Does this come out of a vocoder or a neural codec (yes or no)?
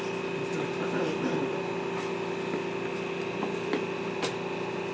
no